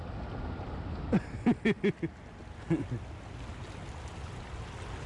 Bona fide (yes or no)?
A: yes